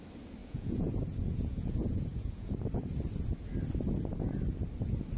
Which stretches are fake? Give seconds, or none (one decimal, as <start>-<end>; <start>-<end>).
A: 0.4-2.5